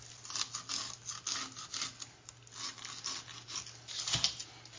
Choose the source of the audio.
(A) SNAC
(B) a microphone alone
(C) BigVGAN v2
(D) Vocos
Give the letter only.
B